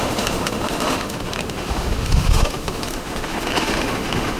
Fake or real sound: fake